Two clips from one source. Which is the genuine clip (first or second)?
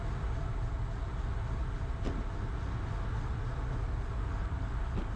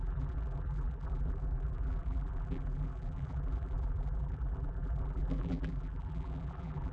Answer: first